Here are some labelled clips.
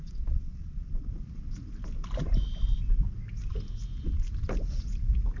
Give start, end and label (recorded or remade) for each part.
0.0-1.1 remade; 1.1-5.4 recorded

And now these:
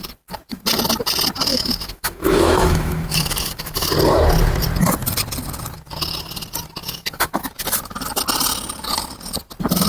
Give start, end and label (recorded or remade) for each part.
0.0-1.5 recorded; 1.5-3.9 remade; 3.9-6.8 recorded; 6.8-7.5 remade; 7.5-9.9 recorded

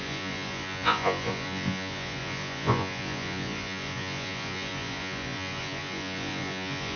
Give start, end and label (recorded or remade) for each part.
0.0-7.0 remade

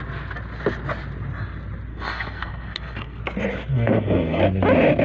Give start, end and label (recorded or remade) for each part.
0.0-1.9 recorded; 1.9-3.2 remade; 3.2-3.7 recorded; 3.7-4.4 remade; 4.4-5.0 recorded

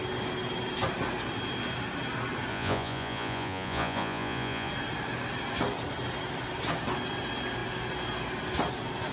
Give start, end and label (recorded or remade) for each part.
0.0-2.5 recorded; 2.5-4.7 remade; 4.7-9.1 recorded

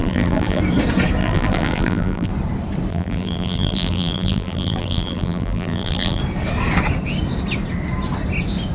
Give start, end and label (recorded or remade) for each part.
0.0-0.6 remade; 0.6-1.2 recorded; 1.2-2.3 remade; 2.3-2.9 recorded; 2.9-6.2 remade; 6.2-8.7 recorded